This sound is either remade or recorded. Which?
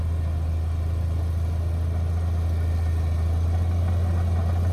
recorded